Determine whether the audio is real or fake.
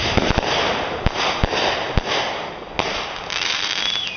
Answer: real